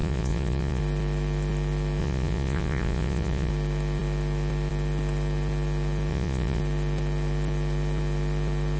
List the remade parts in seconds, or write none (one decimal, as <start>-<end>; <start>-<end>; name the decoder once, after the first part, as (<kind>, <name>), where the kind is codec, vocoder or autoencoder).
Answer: 0.0-0.8 (vocoder, Vocos); 2.0-3.5; 6.1-6.6